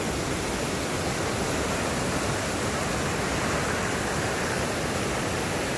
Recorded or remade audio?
recorded